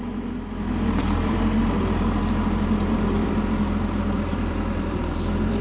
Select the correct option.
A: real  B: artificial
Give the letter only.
B